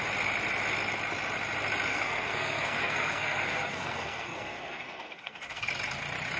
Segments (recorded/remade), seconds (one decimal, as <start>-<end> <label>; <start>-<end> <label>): 0.0-1.9 recorded; 1.9-5.7 remade; 5.7-6.4 recorded